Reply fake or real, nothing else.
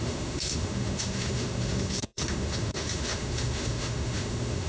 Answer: fake